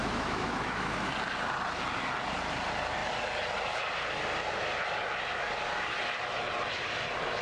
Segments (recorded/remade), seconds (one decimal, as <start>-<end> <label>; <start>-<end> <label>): 0.0-1.1 remade; 1.1-7.4 recorded